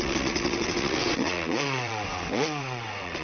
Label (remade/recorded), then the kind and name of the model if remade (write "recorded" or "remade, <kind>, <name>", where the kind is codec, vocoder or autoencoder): remade, vocoder, WaveNeXt